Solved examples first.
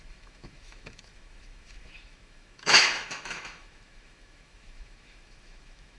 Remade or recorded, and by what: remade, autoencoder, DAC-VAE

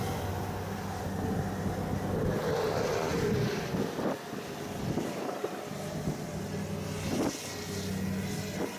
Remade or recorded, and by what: recorded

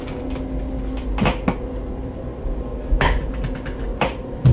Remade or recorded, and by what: recorded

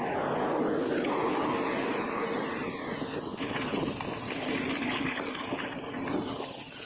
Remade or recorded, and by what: recorded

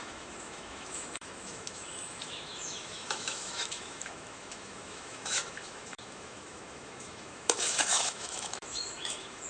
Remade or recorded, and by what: remade, autoencoder, DAC-VAE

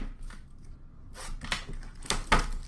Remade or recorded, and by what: recorded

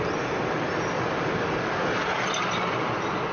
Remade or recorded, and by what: recorded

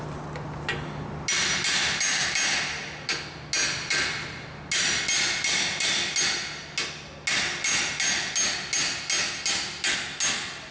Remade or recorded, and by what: recorded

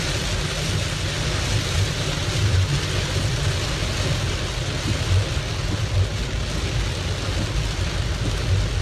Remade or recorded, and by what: recorded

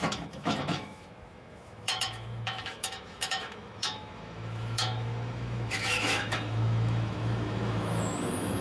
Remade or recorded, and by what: remade, autoencoder, DAC-VAE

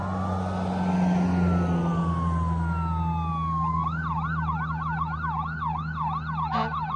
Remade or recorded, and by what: recorded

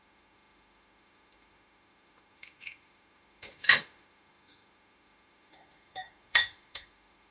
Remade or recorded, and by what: remade, autoencoder, DAC-VAE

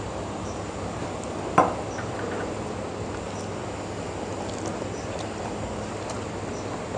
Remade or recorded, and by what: recorded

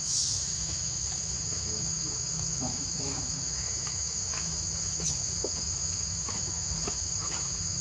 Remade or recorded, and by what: remade, autoencoder, DAC-VAE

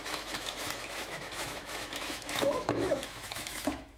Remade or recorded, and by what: remade, autoencoder, DAC-VAE